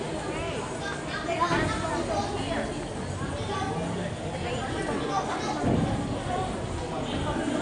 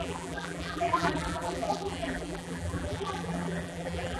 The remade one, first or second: second